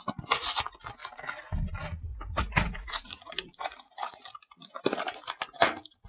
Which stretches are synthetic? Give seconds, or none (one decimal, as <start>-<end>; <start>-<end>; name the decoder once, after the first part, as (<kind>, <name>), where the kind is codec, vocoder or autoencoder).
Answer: 2.1-4.8 (vocoder, Vocos)